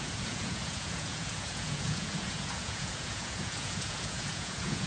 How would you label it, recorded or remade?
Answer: remade